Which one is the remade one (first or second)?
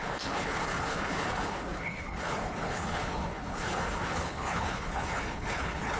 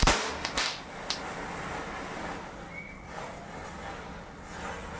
first